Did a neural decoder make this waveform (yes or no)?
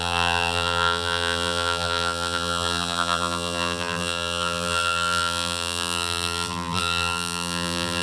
yes